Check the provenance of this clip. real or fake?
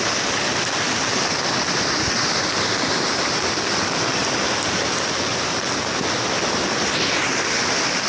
real